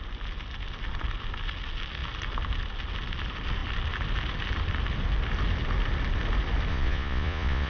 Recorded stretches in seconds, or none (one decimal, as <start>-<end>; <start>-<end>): 0.0-6.7